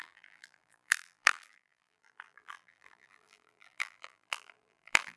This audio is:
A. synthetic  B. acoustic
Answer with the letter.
A